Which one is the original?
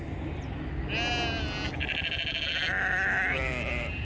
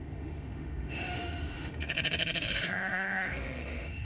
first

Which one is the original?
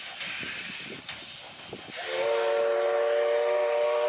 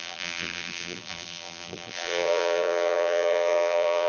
first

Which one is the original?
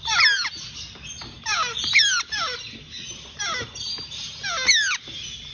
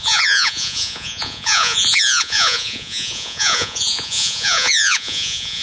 first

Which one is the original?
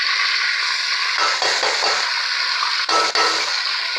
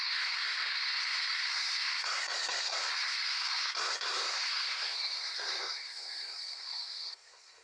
first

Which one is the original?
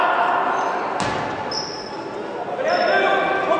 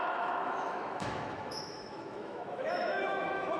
first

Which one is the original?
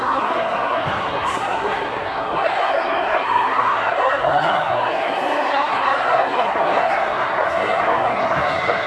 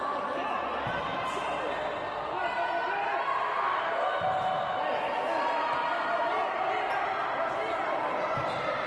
second